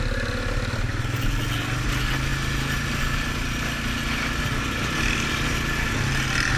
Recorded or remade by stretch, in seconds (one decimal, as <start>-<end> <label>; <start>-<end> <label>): 0.0-6.6 recorded